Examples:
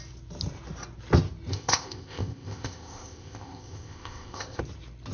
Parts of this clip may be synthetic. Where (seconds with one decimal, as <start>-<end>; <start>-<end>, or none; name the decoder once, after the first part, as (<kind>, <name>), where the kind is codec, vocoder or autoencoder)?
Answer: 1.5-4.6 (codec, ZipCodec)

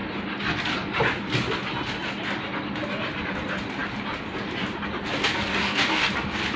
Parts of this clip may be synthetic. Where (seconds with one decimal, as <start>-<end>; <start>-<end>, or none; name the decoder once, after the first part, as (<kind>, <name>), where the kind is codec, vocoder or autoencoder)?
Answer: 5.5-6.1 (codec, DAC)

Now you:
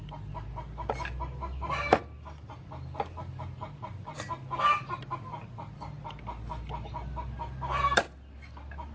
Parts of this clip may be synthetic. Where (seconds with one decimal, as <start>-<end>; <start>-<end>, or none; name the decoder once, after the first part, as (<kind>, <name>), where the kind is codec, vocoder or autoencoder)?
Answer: none

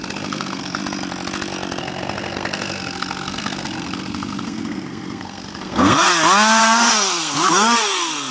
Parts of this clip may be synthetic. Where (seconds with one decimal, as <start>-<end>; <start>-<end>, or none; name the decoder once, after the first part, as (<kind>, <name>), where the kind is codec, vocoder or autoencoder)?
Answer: 0.0-0.8 (codec, SNAC); 1.8-6.1; 6.6-8.3

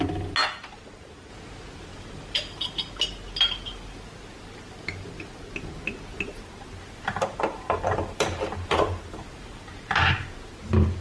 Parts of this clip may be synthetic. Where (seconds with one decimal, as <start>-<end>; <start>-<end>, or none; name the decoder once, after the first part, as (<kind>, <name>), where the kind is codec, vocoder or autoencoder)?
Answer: 0.4-1.3 (vocoder, BigVGAN v2); 1.9-2.6; 6.1-9.7